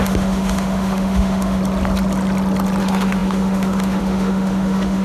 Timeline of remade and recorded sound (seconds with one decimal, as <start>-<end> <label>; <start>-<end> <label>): 0.0-1.6 remade; 1.6-2.8 recorded; 2.8-5.0 remade